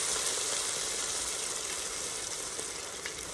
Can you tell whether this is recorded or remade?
recorded